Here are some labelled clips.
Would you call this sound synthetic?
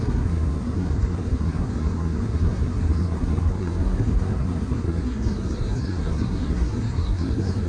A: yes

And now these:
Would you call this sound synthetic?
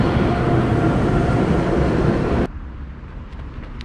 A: no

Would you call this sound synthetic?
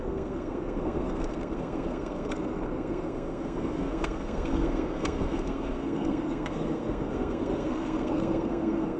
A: yes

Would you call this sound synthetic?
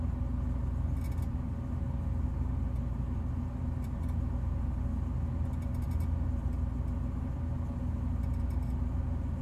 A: no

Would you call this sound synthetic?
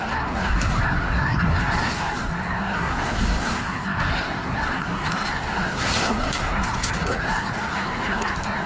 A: yes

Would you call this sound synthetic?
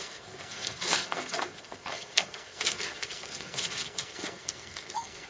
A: yes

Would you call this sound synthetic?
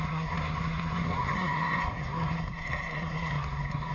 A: yes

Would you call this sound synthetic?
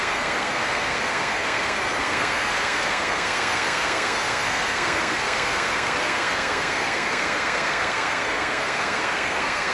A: yes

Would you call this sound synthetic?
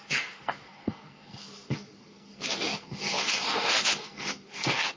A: yes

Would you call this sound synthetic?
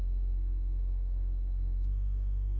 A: yes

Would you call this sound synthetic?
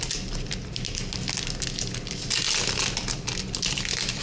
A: no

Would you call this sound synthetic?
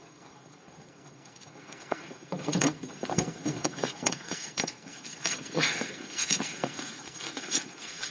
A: yes